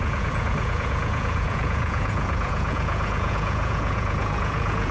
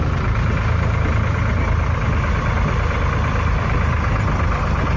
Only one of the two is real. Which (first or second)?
second